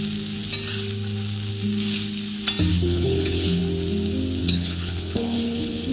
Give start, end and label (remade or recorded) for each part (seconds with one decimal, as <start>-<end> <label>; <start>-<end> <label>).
0.0-2.7 recorded; 2.7-3.6 remade; 3.6-4.4 recorded; 4.4-5.9 remade